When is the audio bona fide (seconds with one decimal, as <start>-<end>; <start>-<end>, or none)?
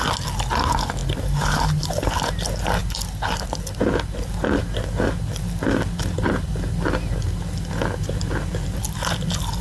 0.0-1.0; 2.1-9.6